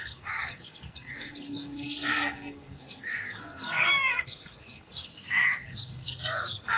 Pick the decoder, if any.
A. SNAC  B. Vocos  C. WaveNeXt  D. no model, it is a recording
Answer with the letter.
A